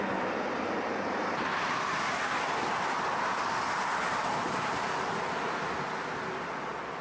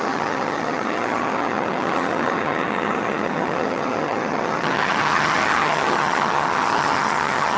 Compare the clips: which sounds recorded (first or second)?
first